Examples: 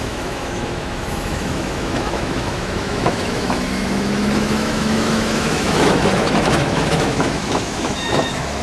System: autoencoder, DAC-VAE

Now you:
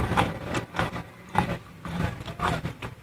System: vocoder, BigVGAN v2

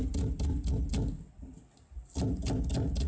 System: none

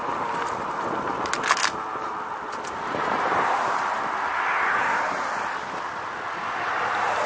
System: none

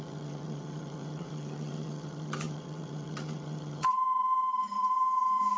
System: vocoder, HiFi-GAN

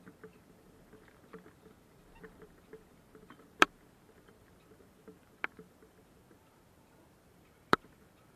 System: vocoder, BigVGAN v2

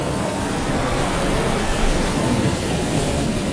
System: codec, SNAC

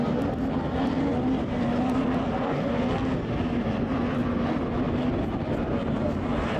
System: none